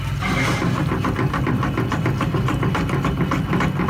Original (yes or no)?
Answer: yes